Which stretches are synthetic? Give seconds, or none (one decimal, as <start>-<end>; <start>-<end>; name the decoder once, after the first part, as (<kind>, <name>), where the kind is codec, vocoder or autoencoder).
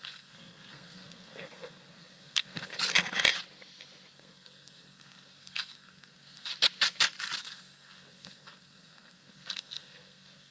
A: 0.0-2.7 (codec, SNAC); 4.1-6.5; 7.4-10.5